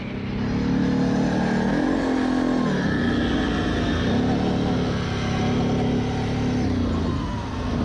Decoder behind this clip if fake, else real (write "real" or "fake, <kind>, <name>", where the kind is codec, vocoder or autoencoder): real